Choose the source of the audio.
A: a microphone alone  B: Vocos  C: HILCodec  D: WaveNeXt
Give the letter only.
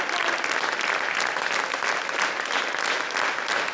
A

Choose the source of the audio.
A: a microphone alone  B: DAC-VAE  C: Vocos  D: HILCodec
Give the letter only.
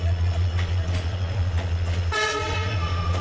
C